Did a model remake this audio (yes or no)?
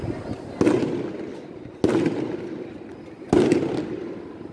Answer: no